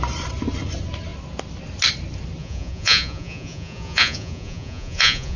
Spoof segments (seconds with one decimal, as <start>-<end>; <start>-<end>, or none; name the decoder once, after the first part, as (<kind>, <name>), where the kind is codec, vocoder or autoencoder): 2.4-5.4 (vocoder, Vocos)